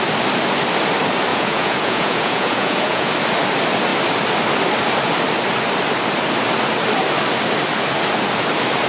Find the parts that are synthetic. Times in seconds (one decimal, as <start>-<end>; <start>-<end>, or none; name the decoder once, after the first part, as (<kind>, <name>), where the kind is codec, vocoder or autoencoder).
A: 1.3-3.1 (vocoder, Vocos)